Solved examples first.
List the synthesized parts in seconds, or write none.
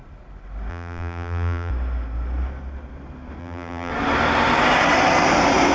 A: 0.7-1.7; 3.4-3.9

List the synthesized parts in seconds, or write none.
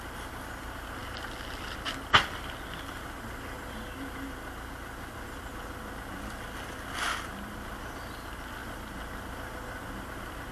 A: none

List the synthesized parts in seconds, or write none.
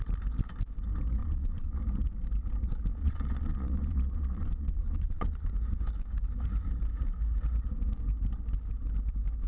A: 1.2-1.8; 3.0-5.5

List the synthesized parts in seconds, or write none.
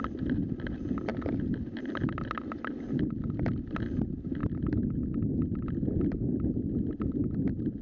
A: none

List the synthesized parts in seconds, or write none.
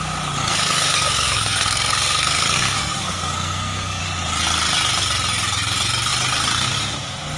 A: 0.4-4.0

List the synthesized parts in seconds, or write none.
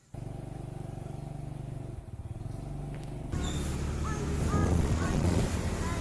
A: 4.6-5.4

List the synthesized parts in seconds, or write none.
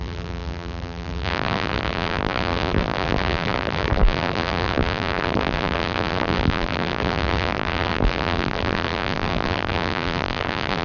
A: 0.0-10.8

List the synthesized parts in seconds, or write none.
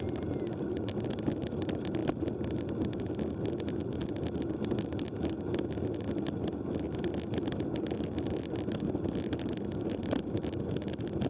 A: none